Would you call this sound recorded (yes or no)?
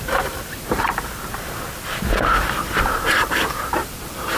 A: no